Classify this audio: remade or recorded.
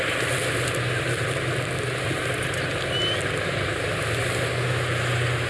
recorded